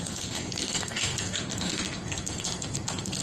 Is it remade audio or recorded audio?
remade